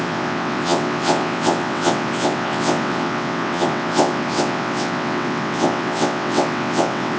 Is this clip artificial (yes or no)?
yes